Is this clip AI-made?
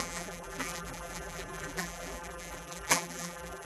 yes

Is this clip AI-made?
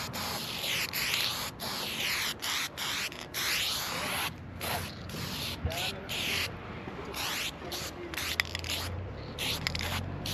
no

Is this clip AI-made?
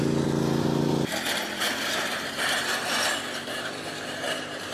yes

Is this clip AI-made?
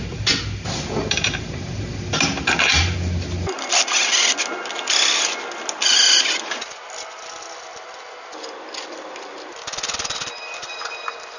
no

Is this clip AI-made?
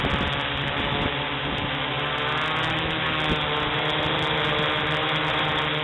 no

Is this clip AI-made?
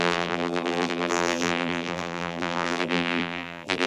yes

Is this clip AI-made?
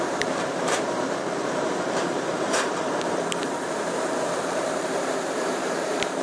yes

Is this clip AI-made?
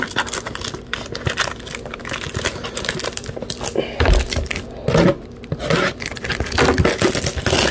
no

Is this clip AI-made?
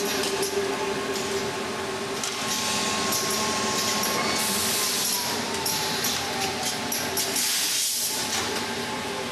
no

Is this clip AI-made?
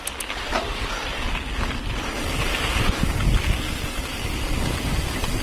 no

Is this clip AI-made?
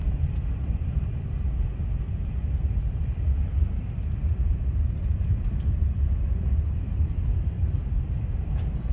yes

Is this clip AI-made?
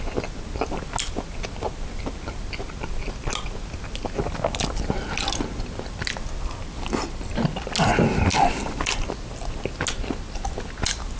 no